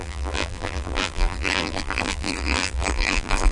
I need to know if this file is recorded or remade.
remade